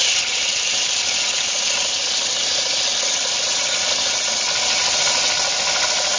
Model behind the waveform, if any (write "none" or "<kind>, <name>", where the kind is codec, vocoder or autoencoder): none